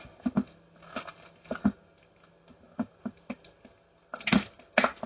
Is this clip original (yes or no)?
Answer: yes